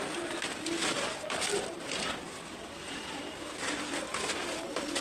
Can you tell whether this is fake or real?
real